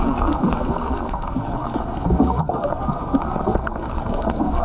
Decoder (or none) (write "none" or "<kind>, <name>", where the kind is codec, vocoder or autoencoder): codec, SNAC